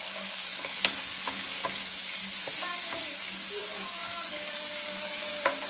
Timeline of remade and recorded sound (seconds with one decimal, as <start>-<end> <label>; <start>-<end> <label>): 0.0-2.2 remade; 2.2-3.2 recorded; 3.2-5.7 remade